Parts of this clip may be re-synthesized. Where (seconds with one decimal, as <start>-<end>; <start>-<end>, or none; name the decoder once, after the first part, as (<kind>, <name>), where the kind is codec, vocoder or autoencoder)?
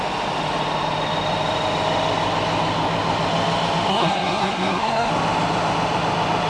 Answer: 3.9-5.1 (codec, SNAC)